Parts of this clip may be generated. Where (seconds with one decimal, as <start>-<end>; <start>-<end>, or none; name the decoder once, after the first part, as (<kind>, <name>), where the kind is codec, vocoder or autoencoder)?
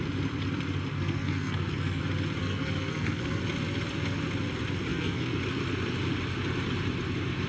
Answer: 0.9-2.0 (codec, SNAC); 2.4-3.4; 4.9-5.4